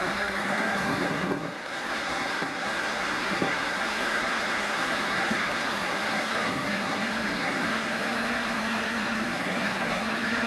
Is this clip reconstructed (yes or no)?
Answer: yes